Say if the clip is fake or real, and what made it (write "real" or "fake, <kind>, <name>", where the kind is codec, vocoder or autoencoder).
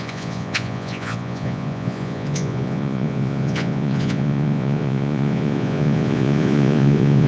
fake, vocoder, Vocos